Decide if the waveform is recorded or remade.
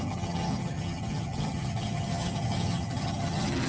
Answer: remade